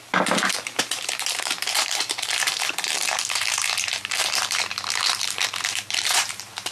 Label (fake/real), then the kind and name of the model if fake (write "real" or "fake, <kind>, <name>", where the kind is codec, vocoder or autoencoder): fake, vocoder, BigVGAN v2